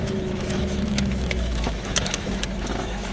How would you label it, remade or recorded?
remade